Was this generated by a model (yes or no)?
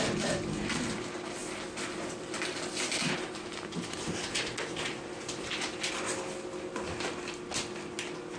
no